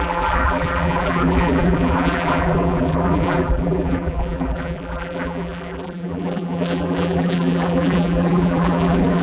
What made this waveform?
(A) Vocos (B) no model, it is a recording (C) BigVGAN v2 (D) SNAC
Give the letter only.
C